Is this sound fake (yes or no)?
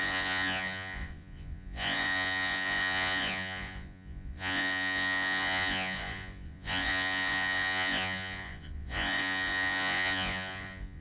yes